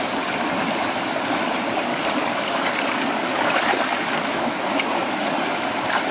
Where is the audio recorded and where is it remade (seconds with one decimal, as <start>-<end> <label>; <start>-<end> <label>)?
0.0-1.9 recorded; 1.9-5.6 remade; 5.6-6.1 recorded